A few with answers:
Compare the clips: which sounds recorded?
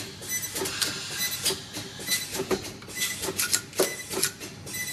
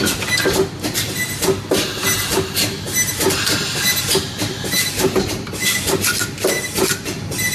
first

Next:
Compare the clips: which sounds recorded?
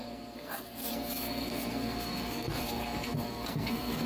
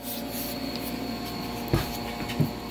second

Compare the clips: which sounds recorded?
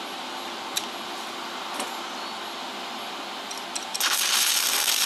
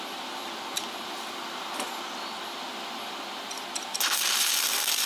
first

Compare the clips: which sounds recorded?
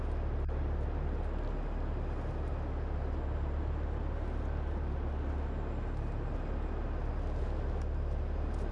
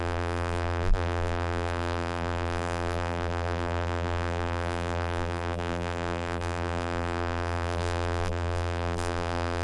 first